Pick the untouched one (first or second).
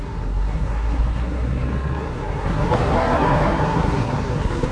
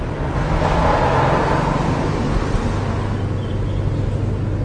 second